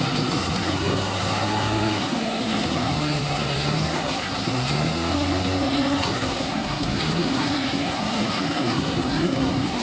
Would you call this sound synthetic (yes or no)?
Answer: yes